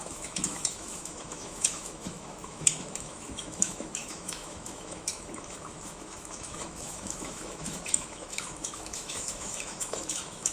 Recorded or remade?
remade